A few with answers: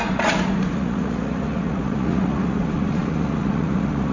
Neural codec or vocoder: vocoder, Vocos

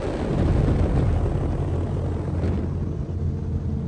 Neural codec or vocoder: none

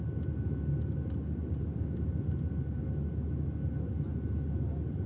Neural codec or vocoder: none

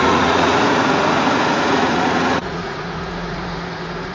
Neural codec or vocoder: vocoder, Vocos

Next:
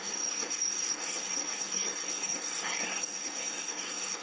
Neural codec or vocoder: codec, SNAC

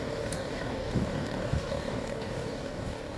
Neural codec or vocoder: codec, DAC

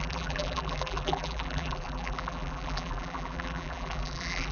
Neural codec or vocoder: vocoder, BigVGAN v2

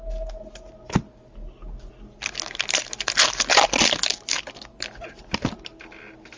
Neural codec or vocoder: none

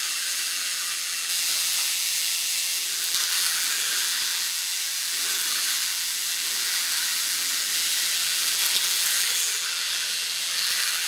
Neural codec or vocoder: vocoder, BigVGAN v2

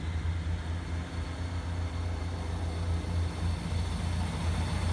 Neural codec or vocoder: none